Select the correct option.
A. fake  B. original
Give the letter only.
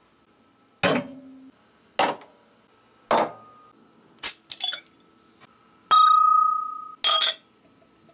B